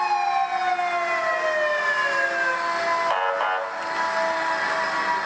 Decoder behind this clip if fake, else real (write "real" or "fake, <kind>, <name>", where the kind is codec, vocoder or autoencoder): real